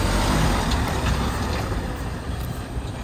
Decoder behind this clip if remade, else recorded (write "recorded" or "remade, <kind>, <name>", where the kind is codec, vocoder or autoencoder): remade, vocoder, BigVGAN v2